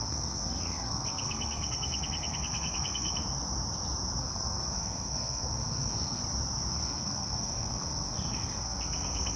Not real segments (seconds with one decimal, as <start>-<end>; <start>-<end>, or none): 0.0-3.2; 4.2-6.2; 6.7-9.4

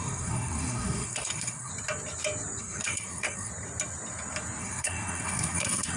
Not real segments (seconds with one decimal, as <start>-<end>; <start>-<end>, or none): 0.0-1.7; 2.6-3.5; 4.6-6.0

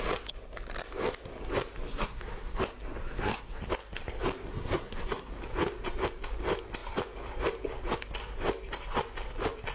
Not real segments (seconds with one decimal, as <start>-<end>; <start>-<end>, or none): 1.9-2.6; 3.0-3.6; 4.5-5.3

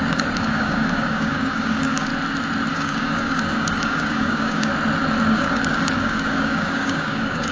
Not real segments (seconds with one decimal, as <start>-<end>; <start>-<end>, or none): 0.0-2.1; 2.7-4.7; 5.3-7.5

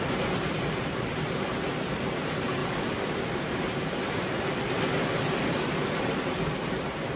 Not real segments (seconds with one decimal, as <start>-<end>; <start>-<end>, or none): none

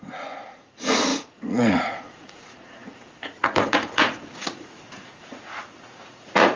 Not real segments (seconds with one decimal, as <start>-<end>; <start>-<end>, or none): 0.0-6.6

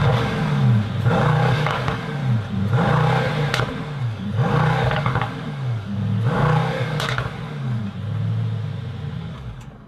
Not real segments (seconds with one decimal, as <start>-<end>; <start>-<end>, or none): 0.0-0.6; 1.1-2.2; 4.0-7.8; 9.2-9.9

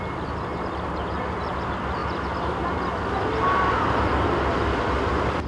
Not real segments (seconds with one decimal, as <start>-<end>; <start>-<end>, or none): 0.5-1.2